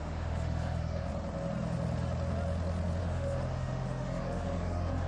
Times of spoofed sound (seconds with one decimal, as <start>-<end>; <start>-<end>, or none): 0.0-1.1; 3.0-5.1

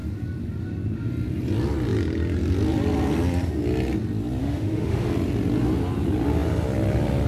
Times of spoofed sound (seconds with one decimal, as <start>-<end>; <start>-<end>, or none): 4.4-5.1